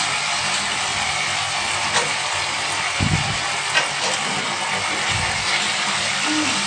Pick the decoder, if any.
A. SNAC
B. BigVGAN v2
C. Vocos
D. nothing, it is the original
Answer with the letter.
D